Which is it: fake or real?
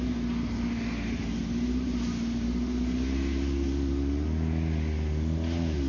real